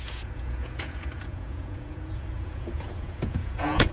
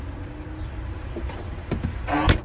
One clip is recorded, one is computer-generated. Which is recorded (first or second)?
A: second